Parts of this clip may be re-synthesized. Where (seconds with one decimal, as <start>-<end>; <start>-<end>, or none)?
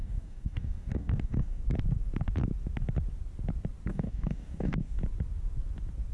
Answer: 0.0-1.6; 3.9-5.0